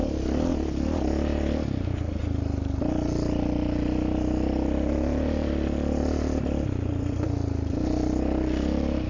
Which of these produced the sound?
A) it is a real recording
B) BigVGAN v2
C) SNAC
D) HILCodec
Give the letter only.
A